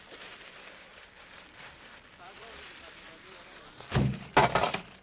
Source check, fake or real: fake